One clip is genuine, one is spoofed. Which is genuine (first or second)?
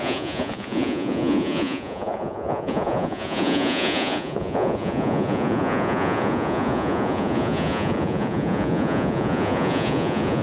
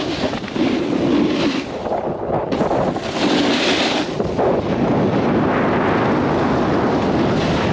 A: second